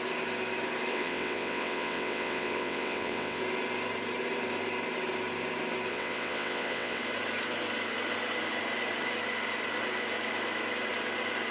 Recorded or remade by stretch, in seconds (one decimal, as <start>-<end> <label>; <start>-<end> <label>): 0.0-0.9 recorded; 0.9-3.4 remade; 3.4-5.9 recorded; 5.9-7.0 remade; 7.0-11.5 recorded

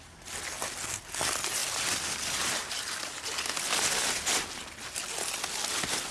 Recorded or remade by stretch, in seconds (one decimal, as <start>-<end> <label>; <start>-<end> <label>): 0.0-6.1 recorded

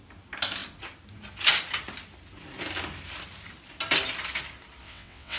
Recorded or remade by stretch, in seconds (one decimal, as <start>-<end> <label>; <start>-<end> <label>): 0.0-4.8 recorded; 4.8-5.4 remade